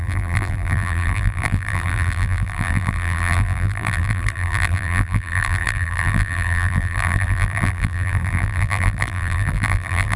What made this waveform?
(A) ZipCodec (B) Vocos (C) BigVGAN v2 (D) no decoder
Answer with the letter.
C